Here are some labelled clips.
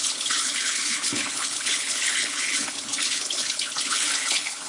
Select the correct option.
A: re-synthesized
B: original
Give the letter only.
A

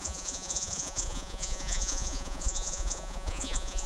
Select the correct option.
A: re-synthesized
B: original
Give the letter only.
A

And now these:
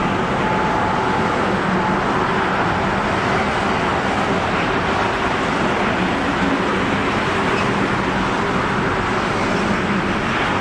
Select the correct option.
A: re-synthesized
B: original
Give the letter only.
B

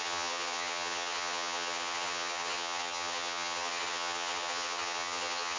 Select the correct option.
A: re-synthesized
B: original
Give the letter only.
A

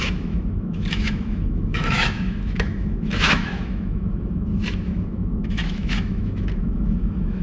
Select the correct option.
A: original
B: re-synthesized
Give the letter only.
B